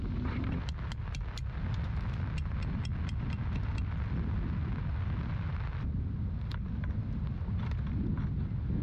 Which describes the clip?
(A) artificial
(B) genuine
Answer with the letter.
B